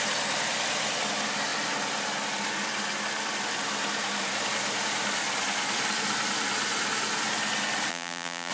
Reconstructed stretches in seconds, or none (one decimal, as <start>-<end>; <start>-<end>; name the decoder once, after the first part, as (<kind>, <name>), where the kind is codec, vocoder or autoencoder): 7.9-8.5 (vocoder, BigVGAN v2)